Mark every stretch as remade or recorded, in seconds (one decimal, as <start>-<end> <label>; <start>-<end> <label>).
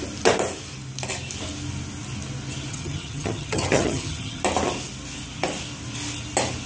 0.0-2.7 recorded; 2.7-4.4 remade; 4.4-6.7 recorded